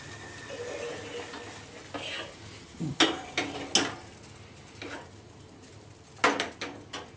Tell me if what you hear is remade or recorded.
recorded